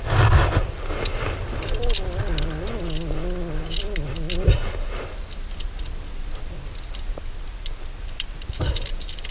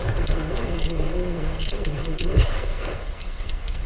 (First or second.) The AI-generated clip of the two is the second